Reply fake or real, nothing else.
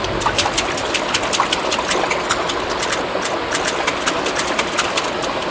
real